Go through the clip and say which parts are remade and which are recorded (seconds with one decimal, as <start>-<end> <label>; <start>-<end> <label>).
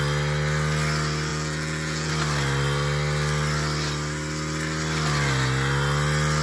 0.0-1.3 recorded; 1.3-2.1 remade; 2.1-6.4 recorded